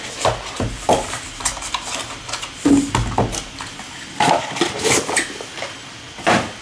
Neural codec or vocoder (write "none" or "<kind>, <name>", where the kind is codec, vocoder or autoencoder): none